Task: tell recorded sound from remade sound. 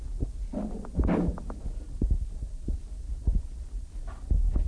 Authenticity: recorded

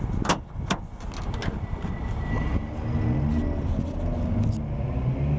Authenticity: recorded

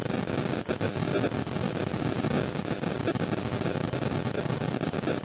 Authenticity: recorded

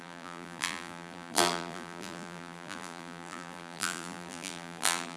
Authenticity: remade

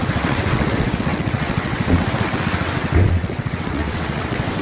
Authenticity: remade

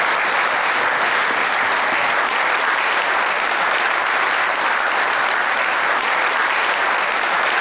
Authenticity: recorded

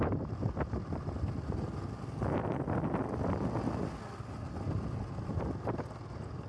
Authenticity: recorded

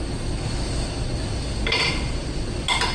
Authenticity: recorded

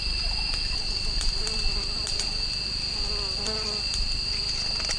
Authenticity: recorded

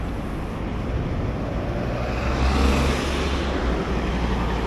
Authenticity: recorded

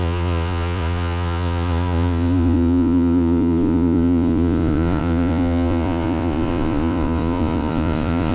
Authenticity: remade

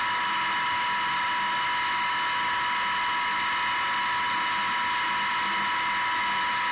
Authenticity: recorded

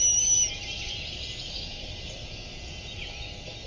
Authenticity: recorded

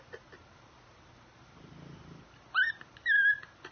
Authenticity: recorded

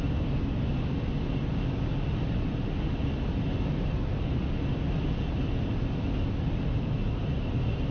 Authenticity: recorded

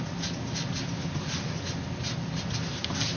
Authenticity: recorded